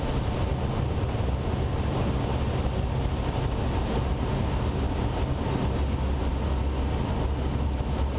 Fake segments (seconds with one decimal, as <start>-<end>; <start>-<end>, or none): none